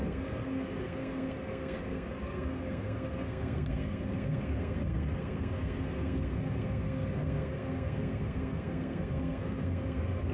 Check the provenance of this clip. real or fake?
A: fake